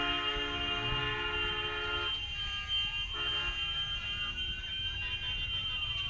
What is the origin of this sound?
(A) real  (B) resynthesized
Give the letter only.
A